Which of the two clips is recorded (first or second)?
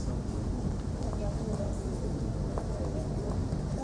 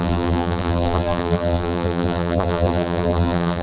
first